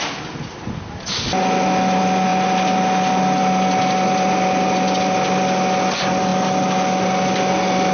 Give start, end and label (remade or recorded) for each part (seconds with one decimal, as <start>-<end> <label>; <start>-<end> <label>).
0.0-7.9 recorded